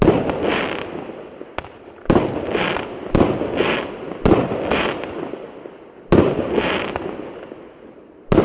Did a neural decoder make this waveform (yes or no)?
no